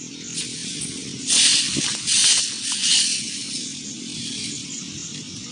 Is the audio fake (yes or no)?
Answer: no